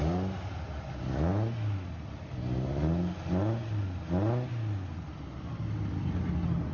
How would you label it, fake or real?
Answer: real